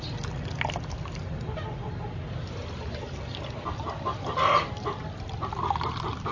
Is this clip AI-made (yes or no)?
no